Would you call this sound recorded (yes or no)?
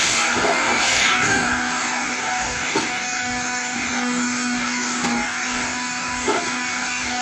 no